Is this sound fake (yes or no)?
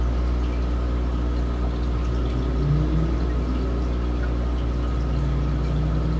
no